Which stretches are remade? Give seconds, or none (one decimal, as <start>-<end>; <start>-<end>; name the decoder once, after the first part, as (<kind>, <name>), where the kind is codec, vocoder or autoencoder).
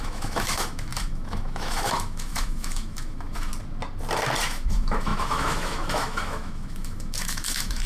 0.0-3.5 (autoencoder, DAC-VAE); 4.4-7.9